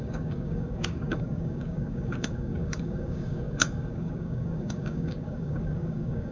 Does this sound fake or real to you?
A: fake